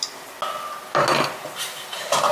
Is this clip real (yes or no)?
yes